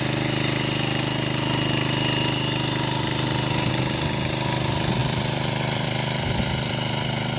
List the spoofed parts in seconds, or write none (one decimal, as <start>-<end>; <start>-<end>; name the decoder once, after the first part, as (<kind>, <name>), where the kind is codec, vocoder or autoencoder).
5.0-7.4 (vocoder, BigVGAN v2)